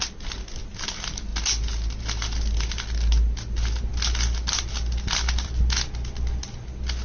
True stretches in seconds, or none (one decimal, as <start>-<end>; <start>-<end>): 0.0-7.0